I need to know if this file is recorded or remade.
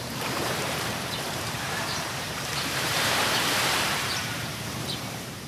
remade